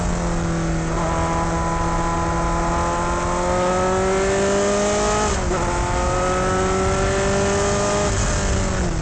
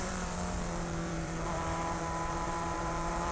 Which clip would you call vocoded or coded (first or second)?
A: second